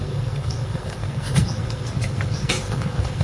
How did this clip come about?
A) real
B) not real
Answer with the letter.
B